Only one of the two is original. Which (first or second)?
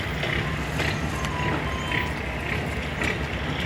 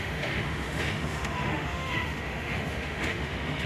first